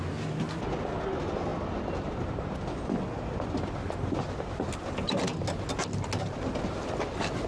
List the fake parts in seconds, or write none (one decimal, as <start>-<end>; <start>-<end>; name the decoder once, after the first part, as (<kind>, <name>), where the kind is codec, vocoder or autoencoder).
none